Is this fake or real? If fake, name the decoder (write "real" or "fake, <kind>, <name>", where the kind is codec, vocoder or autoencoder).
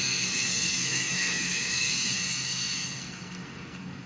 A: fake, codec, SNAC